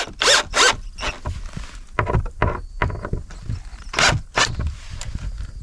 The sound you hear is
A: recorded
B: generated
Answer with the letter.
A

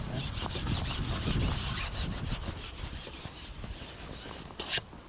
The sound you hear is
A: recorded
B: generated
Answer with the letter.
A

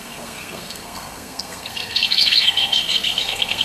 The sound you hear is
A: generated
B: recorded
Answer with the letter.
A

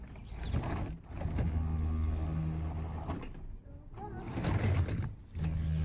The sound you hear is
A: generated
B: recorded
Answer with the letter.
B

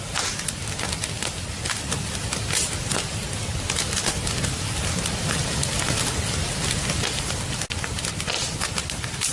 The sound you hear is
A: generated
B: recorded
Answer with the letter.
B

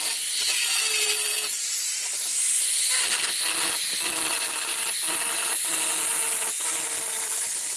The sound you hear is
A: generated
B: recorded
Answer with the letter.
B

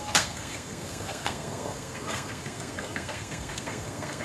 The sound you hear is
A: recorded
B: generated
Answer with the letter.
B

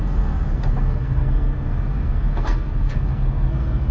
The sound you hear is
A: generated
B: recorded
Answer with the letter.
A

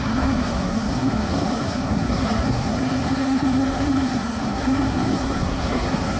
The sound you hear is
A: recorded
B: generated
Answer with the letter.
B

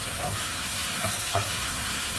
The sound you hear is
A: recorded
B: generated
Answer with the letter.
B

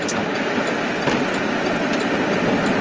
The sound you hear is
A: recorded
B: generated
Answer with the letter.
A